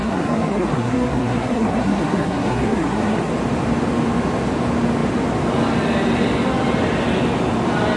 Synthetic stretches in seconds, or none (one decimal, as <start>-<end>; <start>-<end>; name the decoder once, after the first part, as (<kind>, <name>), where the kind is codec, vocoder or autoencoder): 0.0-3.3 (codec, SNAC)